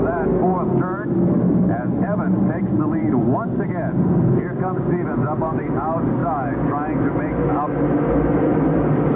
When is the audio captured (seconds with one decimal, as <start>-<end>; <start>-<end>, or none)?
6.2-8.5

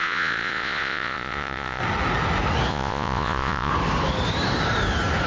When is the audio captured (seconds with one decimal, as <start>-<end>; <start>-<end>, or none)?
1.8-2.7; 3.7-5.3